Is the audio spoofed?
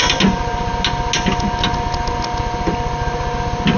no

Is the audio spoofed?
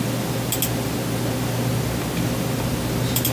no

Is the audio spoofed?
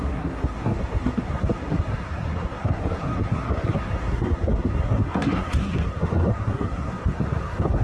yes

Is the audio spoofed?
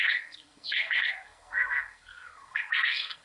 yes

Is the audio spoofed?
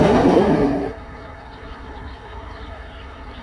yes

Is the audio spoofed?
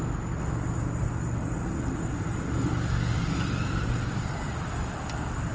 no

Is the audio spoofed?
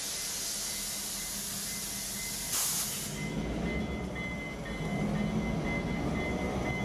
no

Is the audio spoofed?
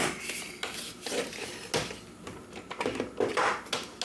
no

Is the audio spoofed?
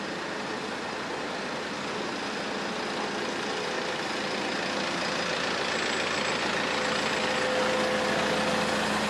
no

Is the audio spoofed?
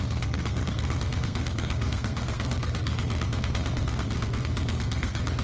yes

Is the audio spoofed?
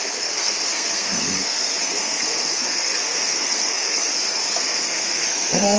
yes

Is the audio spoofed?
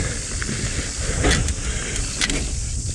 no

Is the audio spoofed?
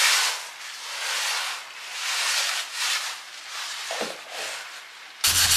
no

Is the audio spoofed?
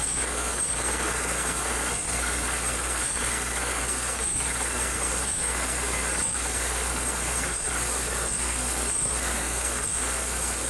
yes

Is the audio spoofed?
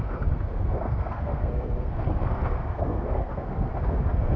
yes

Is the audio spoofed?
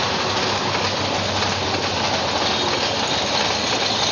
no